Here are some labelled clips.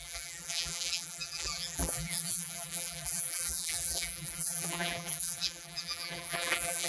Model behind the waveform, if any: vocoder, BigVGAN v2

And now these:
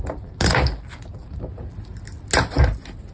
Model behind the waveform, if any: none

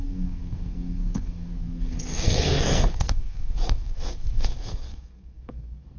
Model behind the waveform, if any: codec, SNAC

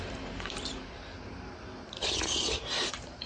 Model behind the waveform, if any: vocoder, BigVGAN v2